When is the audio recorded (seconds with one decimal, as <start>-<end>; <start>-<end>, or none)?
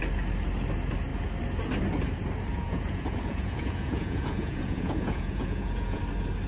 0.0-2.5; 6.0-6.5